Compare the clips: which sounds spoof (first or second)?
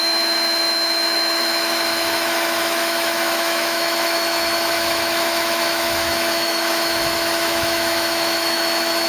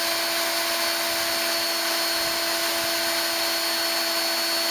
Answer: first